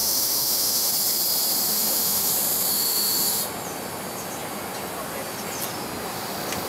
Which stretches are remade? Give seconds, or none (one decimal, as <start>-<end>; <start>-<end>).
0.0-0.9; 1.7-2.3; 2.7-3.4